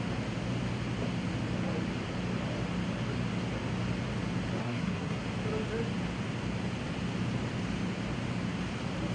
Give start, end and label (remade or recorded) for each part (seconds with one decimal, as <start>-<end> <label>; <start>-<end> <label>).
0.0-4.6 recorded; 4.6-5.2 remade; 5.2-9.1 recorded